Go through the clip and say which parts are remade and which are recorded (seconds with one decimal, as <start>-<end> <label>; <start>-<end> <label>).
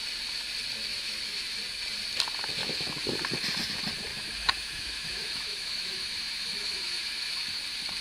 0.0-0.9 recorded; 0.9-1.6 remade; 1.6-2.6 recorded; 2.6-3.2 remade; 3.2-4.1 recorded; 4.1-7.4 remade; 7.4-8.0 recorded